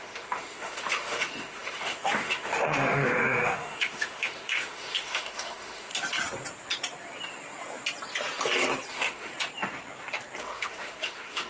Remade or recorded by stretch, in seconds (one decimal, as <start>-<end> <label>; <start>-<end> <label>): 0.0-5.9 remade; 5.9-8.9 recorded; 8.9-9.3 remade; 9.3-10.4 recorded; 10.4-11.5 remade